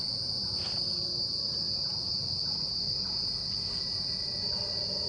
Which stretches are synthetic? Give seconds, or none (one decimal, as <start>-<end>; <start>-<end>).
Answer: none